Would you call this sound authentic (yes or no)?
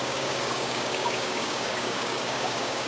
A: no